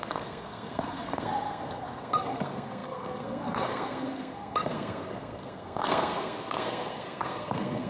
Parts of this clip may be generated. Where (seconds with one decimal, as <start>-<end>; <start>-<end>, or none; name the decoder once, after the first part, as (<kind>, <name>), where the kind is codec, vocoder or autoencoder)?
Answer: 0.0-7.9 (codec, SNAC)